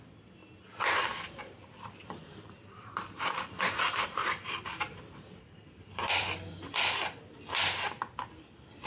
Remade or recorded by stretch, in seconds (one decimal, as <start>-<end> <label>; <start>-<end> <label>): 0.0-2.2 recorded; 2.2-6.2 remade; 6.2-8.9 recorded